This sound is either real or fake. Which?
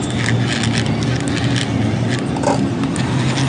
real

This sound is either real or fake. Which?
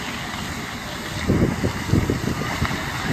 real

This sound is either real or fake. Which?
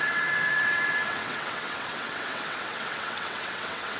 fake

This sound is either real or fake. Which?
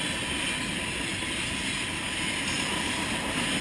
real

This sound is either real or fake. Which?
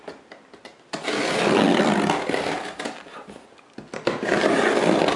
real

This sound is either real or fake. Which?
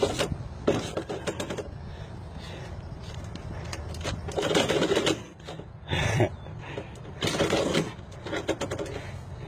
real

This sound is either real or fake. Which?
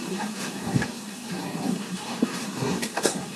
fake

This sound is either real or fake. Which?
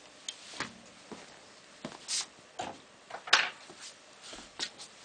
real